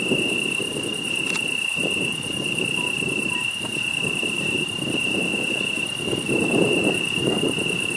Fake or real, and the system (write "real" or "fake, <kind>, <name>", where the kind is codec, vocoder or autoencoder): fake, vocoder, BigVGAN v2